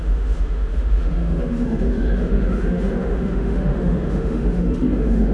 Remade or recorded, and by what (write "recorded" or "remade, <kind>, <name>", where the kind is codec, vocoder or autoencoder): remade, autoencoder, DAC-VAE